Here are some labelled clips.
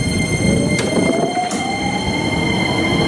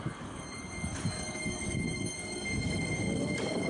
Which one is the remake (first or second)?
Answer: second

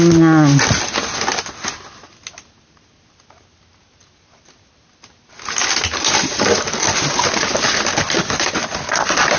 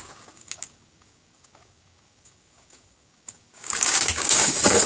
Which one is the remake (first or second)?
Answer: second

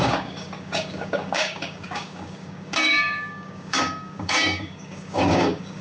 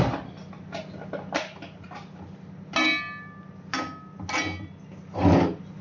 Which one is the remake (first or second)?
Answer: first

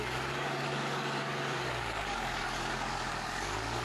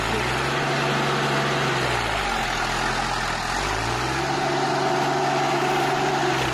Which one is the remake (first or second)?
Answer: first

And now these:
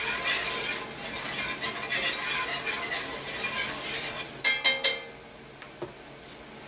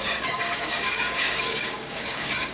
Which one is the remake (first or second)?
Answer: second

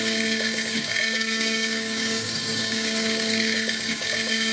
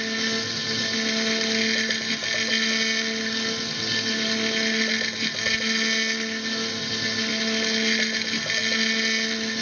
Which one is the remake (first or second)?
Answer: first